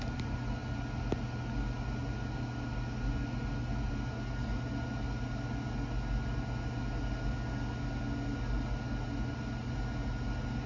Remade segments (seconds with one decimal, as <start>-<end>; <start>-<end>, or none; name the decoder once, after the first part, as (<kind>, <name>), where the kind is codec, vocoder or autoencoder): none